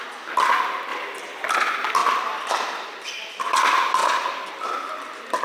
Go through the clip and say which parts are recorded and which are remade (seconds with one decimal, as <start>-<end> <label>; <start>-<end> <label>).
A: 0.0-0.9 recorded; 0.9-1.5 remade; 1.5-2.0 recorded; 2.0-3.4 remade; 3.4-5.4 recorded

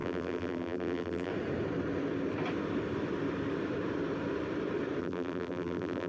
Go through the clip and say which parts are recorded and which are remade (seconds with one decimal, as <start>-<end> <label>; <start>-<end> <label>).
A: 0.0-1.3 remade; 1.3-5.0 recorded; 5.0-6.1 remade

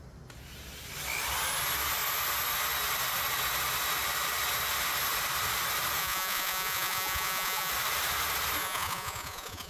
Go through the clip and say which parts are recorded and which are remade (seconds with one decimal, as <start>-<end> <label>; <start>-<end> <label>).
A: 0.0-6.0 recorded; 6.0-7.7 remade; 7.7-8.6 recorded; 8.6-9.7 remade

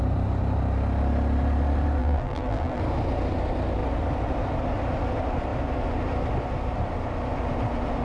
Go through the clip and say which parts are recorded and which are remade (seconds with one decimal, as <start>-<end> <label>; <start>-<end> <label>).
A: 0.0-2.0 recorded; 2.0-2.8 remade; 2.8-8.0 recorded

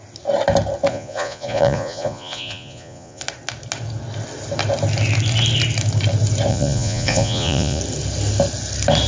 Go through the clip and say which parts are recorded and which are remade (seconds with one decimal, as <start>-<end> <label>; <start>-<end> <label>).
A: 0.0-0.9 recorded; 0.9-3.2 remade; 3.2-6.5 recorded; 6.5-7.8 remade; 7.8-9.1 recorded